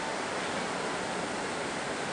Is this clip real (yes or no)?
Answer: yes